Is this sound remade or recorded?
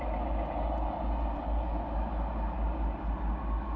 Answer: recorded